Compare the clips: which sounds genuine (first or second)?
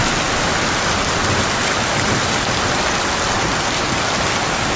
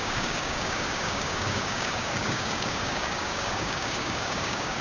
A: first